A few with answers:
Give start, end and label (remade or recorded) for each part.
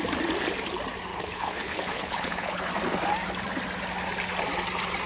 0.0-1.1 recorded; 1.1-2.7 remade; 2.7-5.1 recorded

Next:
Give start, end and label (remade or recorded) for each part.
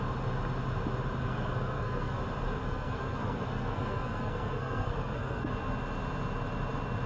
0.0-1.2 recorded; 1.2-2.2 remade; 2.2-2.6 recorded; 2.6-5.5 remade; 5.5-7.1 recorded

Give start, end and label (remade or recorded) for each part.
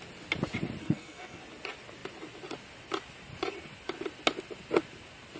0.0-0.8 recorded; 0.8-1.4 remade; 1.4-5.4 recorded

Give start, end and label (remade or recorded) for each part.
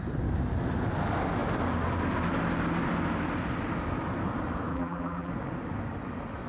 0.0-4.7 recorded; 4.7-5.3 remade; 5.3-6.5 recorded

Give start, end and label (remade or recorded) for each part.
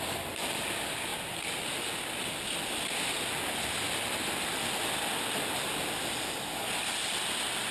0.0-7.7 recorded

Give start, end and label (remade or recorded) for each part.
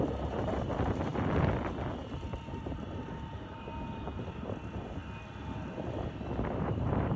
0.0-1.1 remade; 1.1-2.5 recorded; 2.5-5.0 remade; 5.0-6.5 recorded; 6.5-7.2 remade